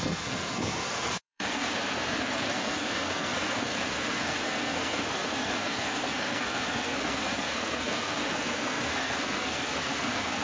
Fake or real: fake